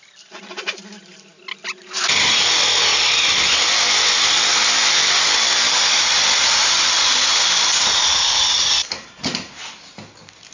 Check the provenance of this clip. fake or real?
real